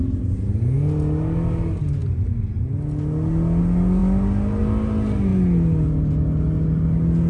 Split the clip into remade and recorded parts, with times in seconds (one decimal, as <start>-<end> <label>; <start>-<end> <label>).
0.0-7.3 recorded